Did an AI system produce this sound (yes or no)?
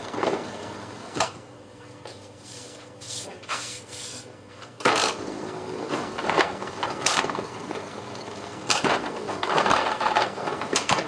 yes